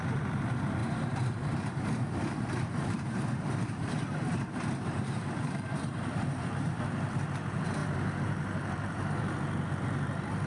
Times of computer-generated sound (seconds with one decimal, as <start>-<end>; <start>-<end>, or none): 0.0-10.5